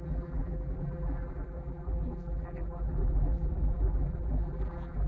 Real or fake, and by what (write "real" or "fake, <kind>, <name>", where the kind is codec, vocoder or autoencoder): fake, vocoder, BigVGAN v2